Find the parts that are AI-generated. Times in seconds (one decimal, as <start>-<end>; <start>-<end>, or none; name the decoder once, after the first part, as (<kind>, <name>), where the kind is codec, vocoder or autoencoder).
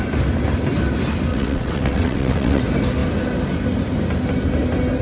1.3-2.6 (vocoder, WaveNeXt)